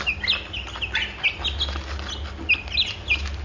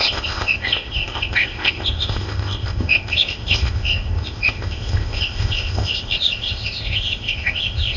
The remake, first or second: second